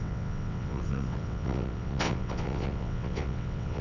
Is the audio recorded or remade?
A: remade